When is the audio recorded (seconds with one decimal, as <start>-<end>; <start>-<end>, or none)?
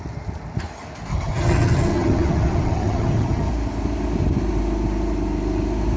0.0-1.1; 3.5-6.0